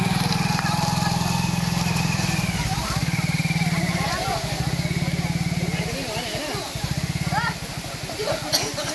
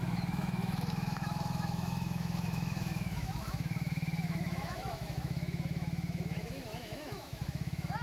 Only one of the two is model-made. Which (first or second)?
second